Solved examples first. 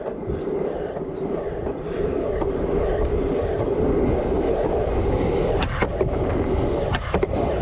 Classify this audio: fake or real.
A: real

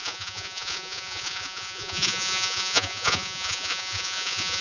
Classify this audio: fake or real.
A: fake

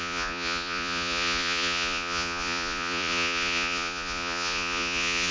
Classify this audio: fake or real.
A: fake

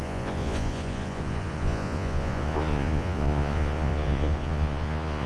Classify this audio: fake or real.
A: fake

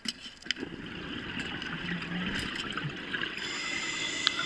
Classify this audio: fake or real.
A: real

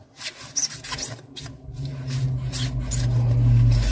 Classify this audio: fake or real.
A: real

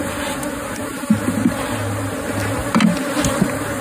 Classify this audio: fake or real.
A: real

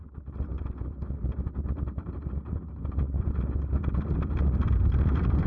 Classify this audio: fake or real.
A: real